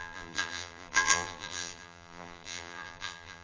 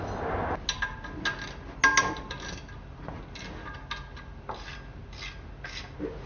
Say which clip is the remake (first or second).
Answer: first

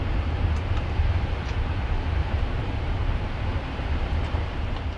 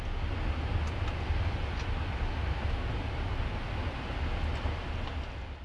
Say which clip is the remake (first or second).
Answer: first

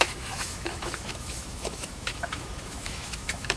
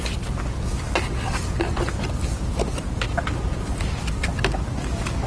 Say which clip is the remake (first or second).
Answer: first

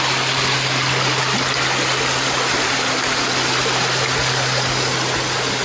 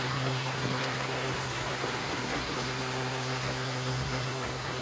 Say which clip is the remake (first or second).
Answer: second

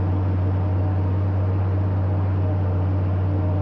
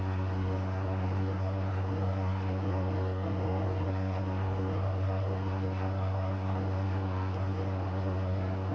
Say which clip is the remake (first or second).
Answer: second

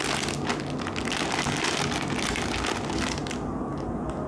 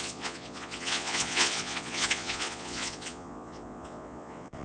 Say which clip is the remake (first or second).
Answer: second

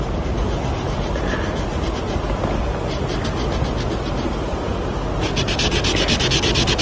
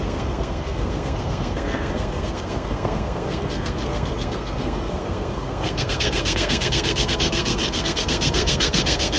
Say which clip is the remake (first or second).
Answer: second